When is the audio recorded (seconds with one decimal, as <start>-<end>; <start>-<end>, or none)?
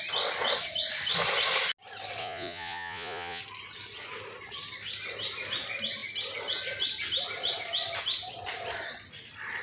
0.0-2.2; 3.4-9.6